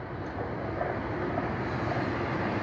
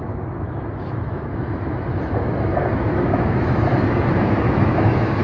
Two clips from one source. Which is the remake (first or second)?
second